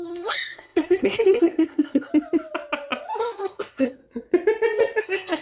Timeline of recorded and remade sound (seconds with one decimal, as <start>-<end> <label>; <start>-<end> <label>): 0.0-2.1 remade; 2.1-3.2 recorded; 3.2-4.0 remade; 4.0-5.0 recorded; 5.0-5.4 remade